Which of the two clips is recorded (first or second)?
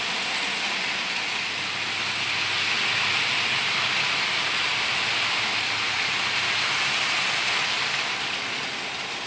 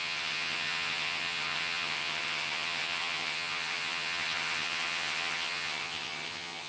first